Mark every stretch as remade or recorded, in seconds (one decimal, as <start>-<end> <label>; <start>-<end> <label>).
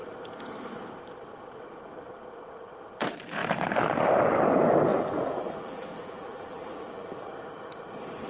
0.0-4.9 recorded; 4.9-7.3 remade; 7.3-8.3 recorded